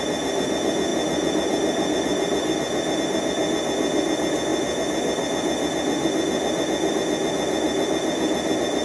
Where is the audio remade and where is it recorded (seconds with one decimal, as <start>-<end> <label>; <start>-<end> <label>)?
0.0-8.8 recorded